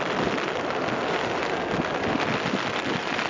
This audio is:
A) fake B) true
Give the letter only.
B